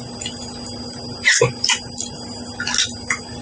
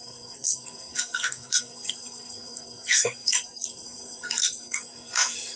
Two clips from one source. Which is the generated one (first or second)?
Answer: second